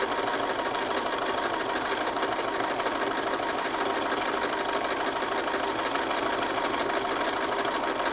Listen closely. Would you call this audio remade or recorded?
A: recorded